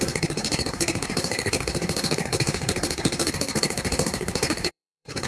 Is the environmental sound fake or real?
fake